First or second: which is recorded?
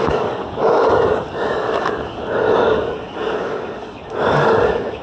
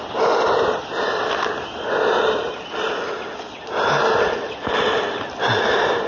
second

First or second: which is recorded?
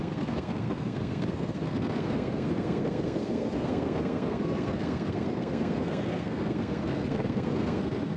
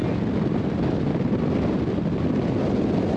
second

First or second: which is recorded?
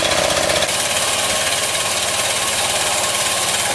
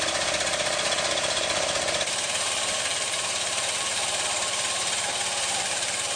first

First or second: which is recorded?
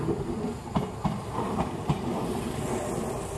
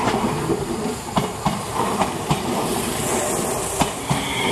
first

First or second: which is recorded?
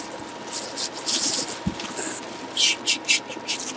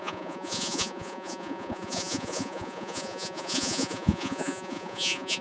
first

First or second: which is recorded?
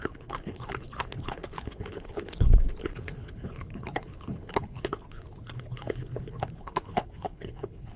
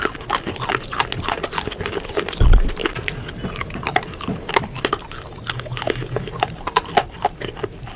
second